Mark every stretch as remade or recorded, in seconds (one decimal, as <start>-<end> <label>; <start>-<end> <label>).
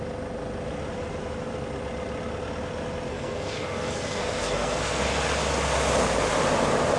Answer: 0.0-3.1 recorded; 3.1-5.0 remade; 5.0-7.0 recorded